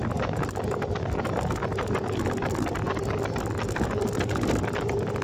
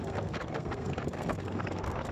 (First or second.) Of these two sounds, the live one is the first